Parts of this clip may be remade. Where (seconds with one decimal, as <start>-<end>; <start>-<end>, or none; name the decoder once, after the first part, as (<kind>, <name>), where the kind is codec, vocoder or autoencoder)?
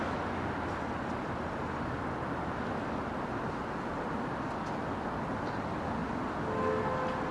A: none